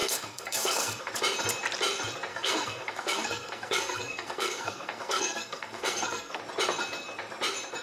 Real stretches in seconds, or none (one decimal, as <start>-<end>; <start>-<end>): 1.1-2.3; 6.4-7.8